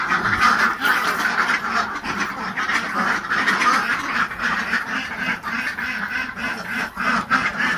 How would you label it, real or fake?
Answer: real